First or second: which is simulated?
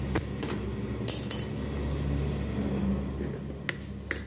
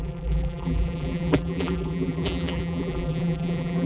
second